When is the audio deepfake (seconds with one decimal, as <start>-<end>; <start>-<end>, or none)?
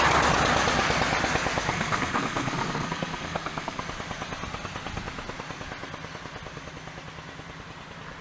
1.7-3.8